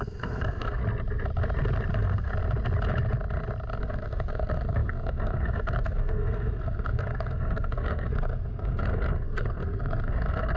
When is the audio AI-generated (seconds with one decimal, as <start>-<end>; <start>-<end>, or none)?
0.0-0.8; 1.9-2.3; 3.8-10.6